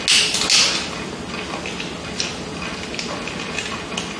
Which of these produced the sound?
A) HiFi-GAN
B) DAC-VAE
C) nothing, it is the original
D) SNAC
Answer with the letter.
C